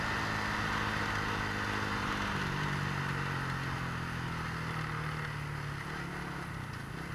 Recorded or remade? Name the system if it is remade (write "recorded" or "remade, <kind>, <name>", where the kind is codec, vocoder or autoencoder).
recorded